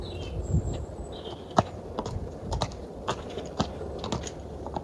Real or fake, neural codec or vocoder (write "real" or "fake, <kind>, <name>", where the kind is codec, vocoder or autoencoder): real